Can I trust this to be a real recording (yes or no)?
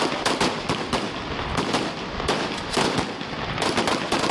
yes